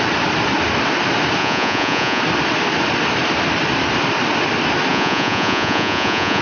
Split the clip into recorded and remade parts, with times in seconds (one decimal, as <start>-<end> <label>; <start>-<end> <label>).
0.0-1.4 recorded; 1.4-2.2 remade; 2.2-4.9 recorded; 4.9-6.4 remade